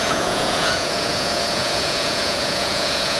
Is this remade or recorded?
remade